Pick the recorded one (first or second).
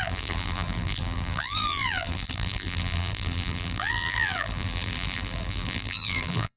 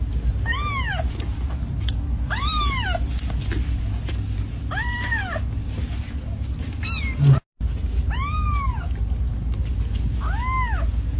second